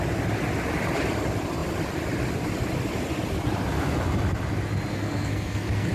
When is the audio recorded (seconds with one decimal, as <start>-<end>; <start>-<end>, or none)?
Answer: 0.0-4.9